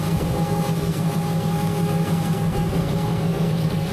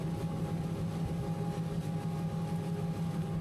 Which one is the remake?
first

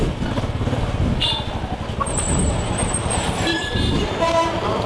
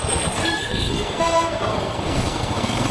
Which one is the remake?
second